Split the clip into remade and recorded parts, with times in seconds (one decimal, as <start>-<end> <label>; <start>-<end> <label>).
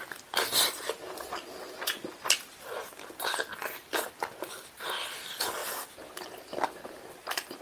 0.0-7.6 recorded